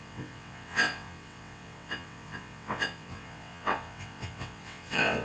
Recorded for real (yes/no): no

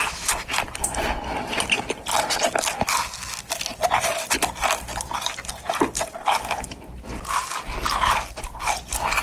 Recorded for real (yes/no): yes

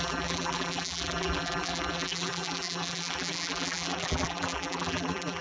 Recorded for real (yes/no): no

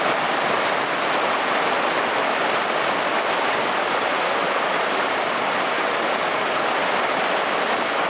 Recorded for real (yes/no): yes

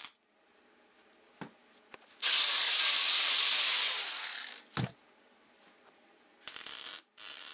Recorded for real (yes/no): yes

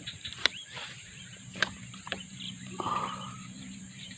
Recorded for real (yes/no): no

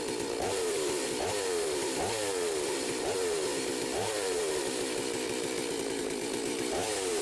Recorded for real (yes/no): no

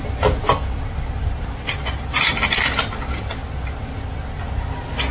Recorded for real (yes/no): yes